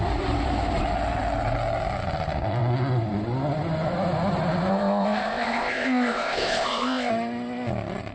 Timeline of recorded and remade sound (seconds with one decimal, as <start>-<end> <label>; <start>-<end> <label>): 0.0-4.7 recorded; 4.7-7.1 remade; 7.1-8.1 recorded